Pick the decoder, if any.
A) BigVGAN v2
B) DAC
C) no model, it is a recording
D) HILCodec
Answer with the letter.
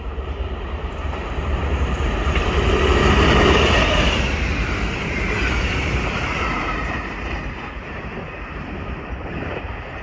A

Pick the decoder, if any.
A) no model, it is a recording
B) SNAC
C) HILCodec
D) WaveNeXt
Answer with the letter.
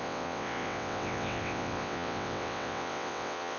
D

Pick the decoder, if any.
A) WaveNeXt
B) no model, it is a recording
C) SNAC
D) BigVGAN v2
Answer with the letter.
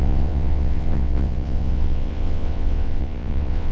A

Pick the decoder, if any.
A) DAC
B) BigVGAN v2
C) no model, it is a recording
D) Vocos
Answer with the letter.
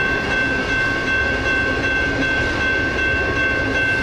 B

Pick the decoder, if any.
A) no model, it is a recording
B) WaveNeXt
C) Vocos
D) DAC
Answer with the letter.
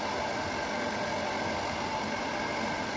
A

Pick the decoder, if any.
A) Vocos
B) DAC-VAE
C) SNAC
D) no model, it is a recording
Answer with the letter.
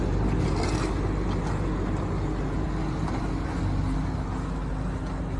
D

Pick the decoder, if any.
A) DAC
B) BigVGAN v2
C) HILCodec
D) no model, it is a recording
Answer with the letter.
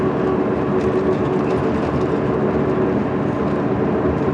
D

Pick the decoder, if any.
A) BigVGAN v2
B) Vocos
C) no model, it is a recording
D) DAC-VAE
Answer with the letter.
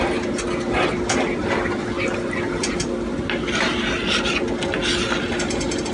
C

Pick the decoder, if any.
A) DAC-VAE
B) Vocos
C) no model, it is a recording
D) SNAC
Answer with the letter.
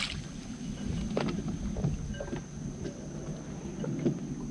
C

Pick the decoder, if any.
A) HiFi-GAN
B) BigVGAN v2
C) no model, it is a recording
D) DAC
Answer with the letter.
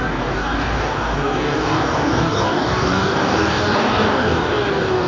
D